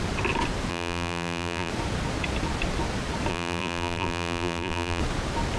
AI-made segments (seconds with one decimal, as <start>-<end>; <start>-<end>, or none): 0.7-1.7; 3.3-5.0